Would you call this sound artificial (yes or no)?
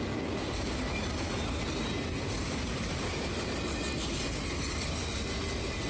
no